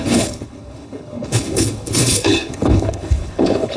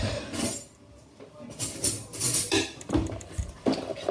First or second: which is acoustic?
second